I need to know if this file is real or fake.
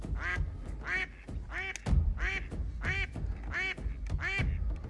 real